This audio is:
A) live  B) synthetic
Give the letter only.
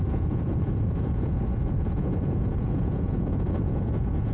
B